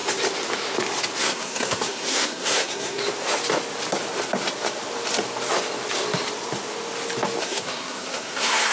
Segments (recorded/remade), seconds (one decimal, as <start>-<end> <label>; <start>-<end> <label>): 0.0-1.2 recorded; 1.2-3.0 remade; 3.0-7.4 recorded; 7.4-8.7 remade